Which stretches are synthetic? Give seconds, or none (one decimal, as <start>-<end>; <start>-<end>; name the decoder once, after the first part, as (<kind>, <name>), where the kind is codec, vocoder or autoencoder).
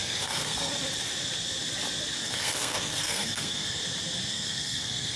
0.0-0.7 (codec, SNAC); 2.2-3.8; 4.3-5.2